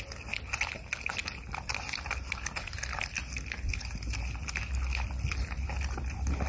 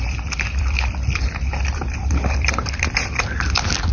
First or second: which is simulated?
second